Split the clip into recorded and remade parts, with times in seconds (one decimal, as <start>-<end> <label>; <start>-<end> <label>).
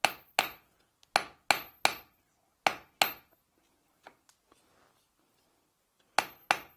0.0-6.8 recorded